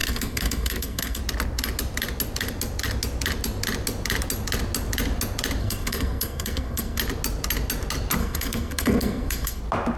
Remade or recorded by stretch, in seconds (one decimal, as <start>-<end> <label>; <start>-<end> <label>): 0.0-1.2 remade; 1.2-5.6 recorded; 5.6-7.0 remade; 7.0-8.2 recorded; 8.2-9.6 remade; 9.6-10.0 recorded

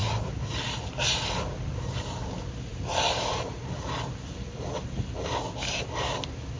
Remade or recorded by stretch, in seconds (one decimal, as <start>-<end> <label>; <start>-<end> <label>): 0.0-6.6 recorded

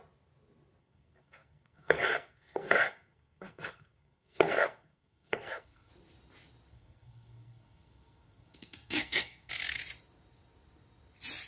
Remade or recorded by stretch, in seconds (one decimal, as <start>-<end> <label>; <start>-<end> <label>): 0.0-0.8 recorded; 0.8-5.9 remade; 5.9-6.7 recorded; 6.7-9.5 remade; 9.5-11.5 recorded

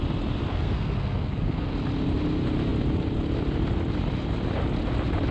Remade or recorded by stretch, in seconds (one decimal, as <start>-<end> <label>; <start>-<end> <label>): 0.0-0.5 recorded; 0.5-1.7 remade; 1.7-5.3 recorded

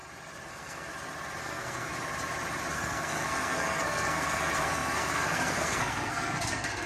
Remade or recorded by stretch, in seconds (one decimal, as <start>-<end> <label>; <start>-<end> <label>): 0.0-0.5 recorded; 0.5-0.9 remade; 0.9-1.4 recorded; 1.4-1.9 remade; 1.9-2.7 recorded; 2.7-6.9 remade

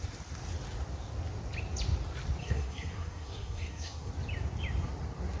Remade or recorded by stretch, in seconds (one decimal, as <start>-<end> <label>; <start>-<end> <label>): 0.0-2.4 recorded; 2.4-4.1 remade; 4.1-5.4 recorded

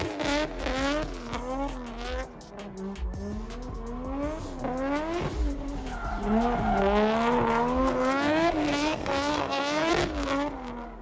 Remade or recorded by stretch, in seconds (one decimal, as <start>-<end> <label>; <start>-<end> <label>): 0.0-7.8 recorded; 7.8-9.9 remade; 9.9-11.0 recorded

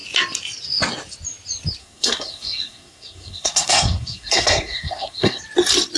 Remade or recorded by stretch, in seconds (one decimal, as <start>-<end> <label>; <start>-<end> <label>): 0.0-1.8 recorded; 1.8-5.4 remade; 5.4-6.0 recorded